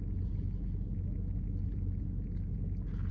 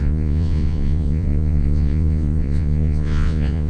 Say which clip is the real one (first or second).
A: first